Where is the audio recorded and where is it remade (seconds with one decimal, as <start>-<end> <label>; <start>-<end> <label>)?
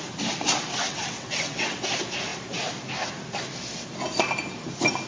0.0-0.7 recorded; 0.7-1.8 remade; 1.8-5.1 recorded